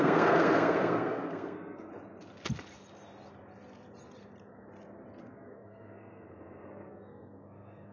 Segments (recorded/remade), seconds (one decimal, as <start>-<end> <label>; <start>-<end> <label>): 0.0-1.9 remade; 1.9-5.2 recorded; 5.2-7.9 remade